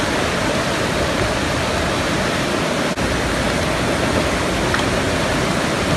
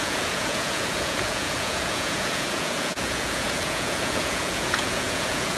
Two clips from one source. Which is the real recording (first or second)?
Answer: first